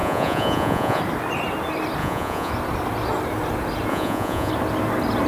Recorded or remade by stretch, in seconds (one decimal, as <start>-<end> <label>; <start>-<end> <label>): 0.0-1.0 remade; 1.0-2.0 recorded; 2.0-2.5 remade; 2.5-3.9 recorded; 3.9-4.5 remade; 4.5-5.3 recorded